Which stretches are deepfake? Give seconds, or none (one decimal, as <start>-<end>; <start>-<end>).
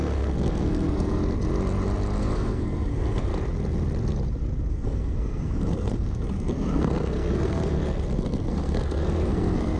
0.0-1.2; 2.2-3.3; 4.7-9.8